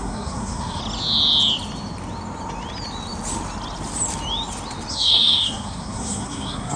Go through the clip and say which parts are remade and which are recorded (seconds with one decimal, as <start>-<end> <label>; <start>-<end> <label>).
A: 0.0-0.8 remade; 0.8-4.9 recorded; 4.9-6.8 remade